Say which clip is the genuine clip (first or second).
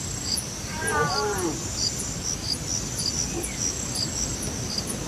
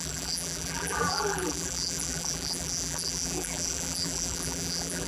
first